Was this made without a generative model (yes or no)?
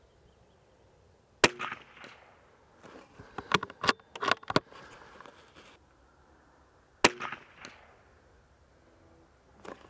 yes